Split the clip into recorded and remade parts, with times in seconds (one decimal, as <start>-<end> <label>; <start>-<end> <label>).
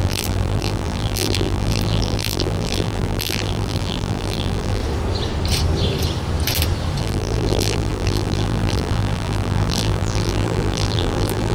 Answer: 0.0-4.8 remade; 4.8-7.0 recorded; 7.0-11.5 remade